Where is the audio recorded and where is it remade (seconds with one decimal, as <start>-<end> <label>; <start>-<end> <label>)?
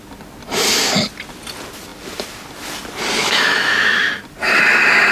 0.0-3.2 recorded; 3.2-4.1 remade; 4.1-5.1 recorded